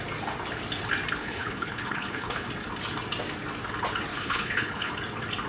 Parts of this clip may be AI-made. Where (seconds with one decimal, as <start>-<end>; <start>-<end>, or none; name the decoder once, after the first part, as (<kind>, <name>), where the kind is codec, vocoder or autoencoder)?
1.2-2.5 (codec, HILCodec); 4.1-4.9

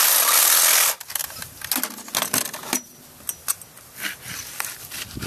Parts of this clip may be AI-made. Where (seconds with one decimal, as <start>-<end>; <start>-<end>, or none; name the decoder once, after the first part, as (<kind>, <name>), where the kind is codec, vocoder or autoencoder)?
none

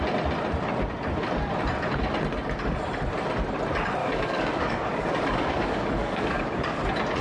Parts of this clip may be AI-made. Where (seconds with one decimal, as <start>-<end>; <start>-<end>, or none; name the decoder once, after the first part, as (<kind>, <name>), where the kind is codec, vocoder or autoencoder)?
4.0-6.8 (codec, DAC)

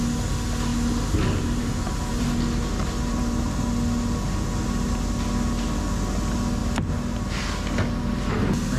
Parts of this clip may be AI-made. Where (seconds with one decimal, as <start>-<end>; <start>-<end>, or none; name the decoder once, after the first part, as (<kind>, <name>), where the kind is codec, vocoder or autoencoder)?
none

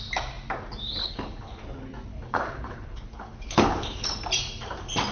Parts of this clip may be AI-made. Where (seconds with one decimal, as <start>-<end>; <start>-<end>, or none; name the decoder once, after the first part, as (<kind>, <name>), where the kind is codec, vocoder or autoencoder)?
1.0-1.6 (codec, HILCodec); 2.1-4.2

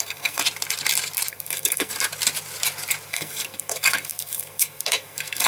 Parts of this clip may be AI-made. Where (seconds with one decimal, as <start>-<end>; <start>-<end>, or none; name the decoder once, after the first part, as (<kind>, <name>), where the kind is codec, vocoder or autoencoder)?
0.0-0.4 (codec, SNAC); 1.3-1.9; 3.1-5.5